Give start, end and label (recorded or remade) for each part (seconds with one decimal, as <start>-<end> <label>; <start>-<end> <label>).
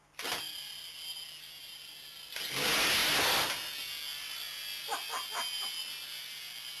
0.0-6.8 recorded